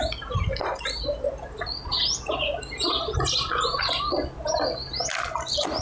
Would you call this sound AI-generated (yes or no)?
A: no